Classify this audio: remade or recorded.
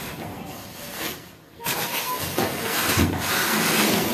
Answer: remade